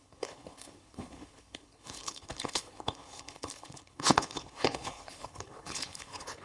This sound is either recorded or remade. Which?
remade